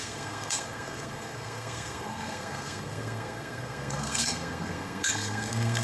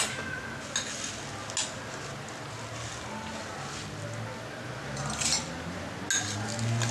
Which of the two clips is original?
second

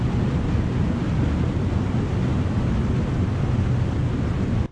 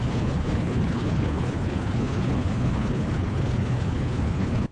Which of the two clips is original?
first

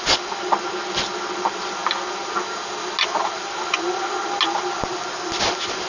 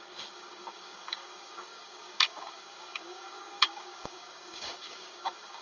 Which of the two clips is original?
first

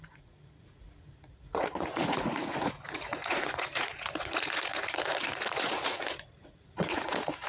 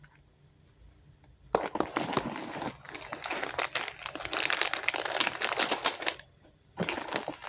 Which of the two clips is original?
second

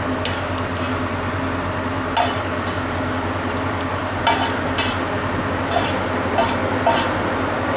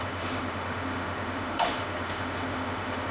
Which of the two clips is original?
first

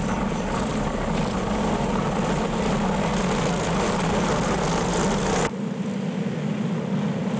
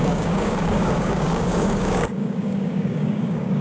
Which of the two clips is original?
first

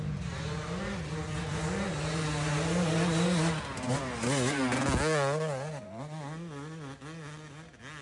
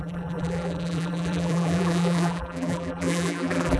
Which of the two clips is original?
first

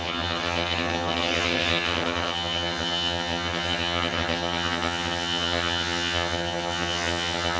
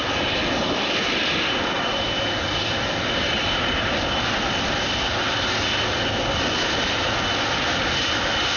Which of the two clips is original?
second